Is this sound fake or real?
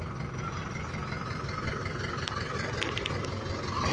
real